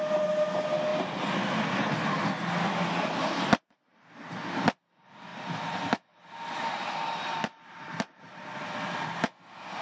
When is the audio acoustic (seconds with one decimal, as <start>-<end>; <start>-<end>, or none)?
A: 0.0-0.9; 1.4-5.3; 8.2-9.8